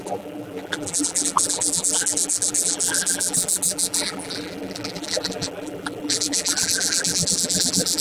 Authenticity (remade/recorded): remade